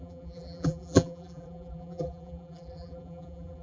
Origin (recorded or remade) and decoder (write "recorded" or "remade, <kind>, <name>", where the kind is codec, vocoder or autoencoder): remade, vocoder, BigVGAN v2